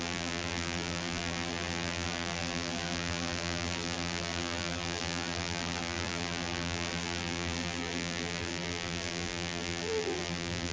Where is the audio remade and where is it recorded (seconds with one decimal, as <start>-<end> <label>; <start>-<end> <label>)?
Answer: 0.0-10.7 remade